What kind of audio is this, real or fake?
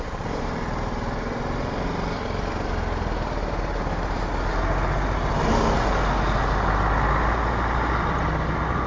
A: real